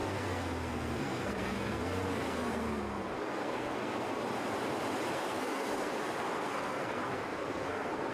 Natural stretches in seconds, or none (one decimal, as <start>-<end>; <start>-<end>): 4.2-5.1